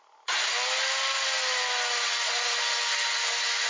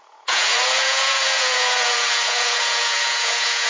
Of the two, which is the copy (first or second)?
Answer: second